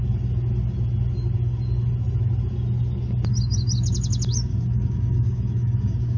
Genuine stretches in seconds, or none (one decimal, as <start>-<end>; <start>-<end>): 0.0-4.5

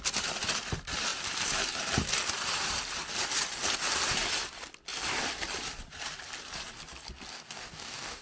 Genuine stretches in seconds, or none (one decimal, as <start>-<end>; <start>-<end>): 0.0-7.3

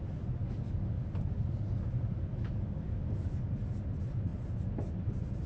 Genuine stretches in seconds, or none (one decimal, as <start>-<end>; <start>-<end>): 0.0-0.4; 3.7-5.5

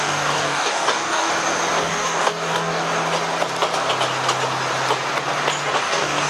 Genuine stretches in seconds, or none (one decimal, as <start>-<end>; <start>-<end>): 1.3-1.8; 2.8-5.8

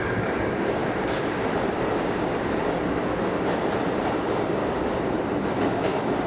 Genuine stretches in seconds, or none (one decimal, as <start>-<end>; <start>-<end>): 0.8-4.0; 4.6-5.5